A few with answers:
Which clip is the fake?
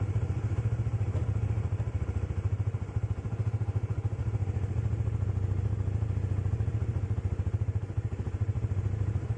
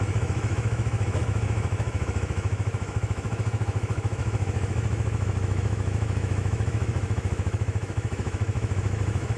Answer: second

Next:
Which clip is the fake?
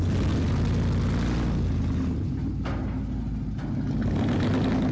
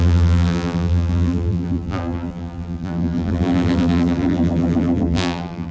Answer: second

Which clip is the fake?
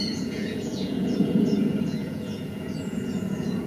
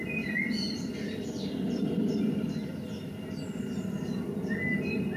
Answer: first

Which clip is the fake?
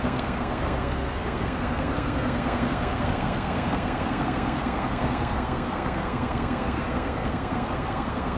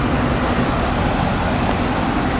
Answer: first